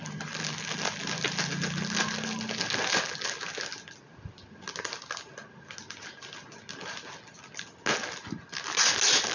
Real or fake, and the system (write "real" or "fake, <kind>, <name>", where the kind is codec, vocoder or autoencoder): real